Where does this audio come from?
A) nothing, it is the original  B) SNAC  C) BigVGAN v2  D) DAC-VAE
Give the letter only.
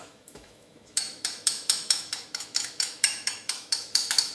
D